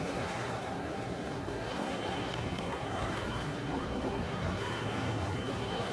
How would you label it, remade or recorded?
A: remade